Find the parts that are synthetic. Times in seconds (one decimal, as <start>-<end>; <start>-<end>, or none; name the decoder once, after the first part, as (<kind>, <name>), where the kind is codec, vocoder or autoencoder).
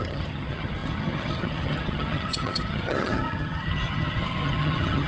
0.0-5.1 (vocoder, HiFi-GAN)